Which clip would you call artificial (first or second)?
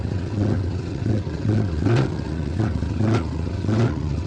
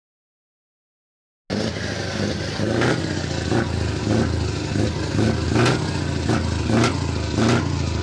first